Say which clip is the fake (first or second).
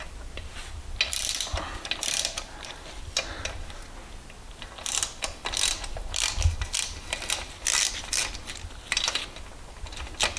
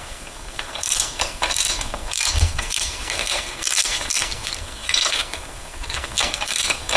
second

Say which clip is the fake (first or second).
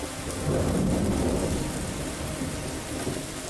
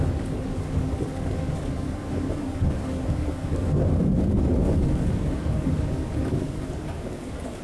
second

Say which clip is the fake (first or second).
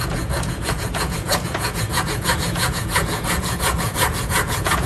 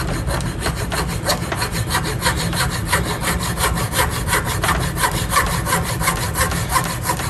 first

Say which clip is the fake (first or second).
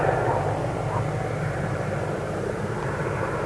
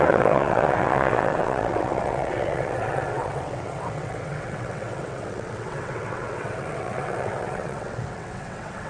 second